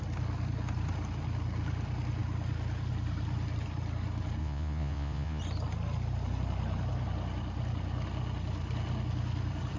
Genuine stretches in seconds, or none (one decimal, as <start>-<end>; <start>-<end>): 0.0-4.4; 5.4-9.8